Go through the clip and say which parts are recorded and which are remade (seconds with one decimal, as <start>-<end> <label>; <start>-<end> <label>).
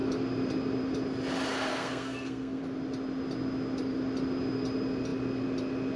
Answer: 0.0-1.7 recorded; 1.7-2.6 remade; 2.6-6.0 recorded